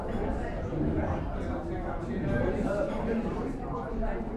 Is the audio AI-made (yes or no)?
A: yes